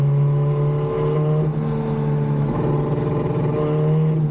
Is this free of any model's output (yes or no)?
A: yes